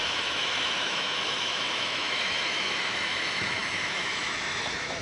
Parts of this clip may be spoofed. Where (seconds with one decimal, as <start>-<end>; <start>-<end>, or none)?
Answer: 0.0-5.0